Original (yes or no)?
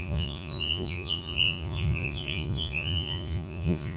no